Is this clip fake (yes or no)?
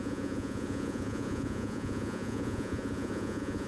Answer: yes